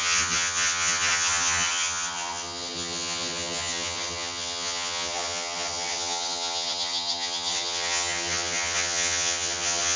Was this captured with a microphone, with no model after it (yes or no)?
no